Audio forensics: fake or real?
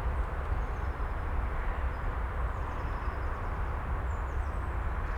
real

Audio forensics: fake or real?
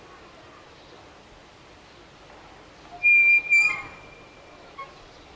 real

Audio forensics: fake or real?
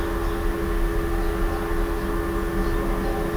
real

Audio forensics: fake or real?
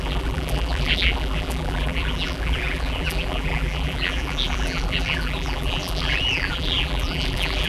fake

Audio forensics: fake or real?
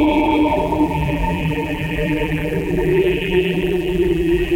fake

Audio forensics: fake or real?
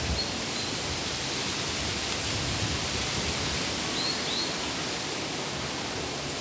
real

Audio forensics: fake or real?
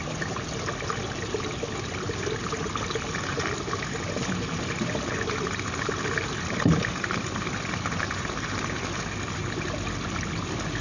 real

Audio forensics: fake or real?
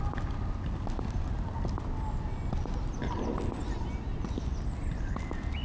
real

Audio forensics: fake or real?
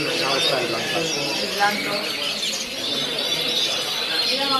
real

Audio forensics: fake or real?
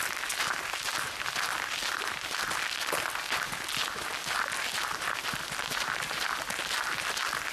real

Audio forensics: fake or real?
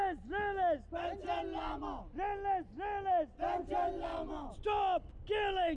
real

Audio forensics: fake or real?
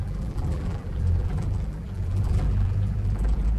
fake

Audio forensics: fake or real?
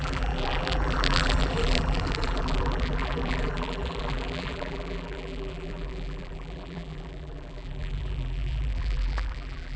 fake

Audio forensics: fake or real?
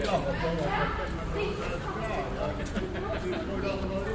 real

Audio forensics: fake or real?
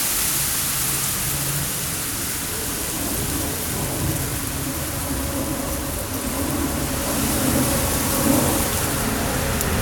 real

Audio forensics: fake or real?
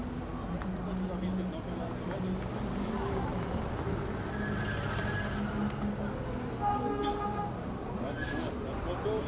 real